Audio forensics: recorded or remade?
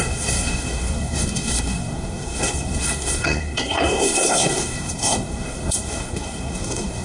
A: remade